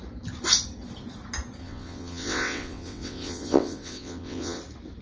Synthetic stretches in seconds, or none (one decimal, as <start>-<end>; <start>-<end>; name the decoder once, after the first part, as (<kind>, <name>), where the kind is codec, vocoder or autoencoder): 1.6-4.6 (vocoder, WaveNeXt)